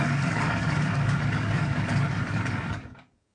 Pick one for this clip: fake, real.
fake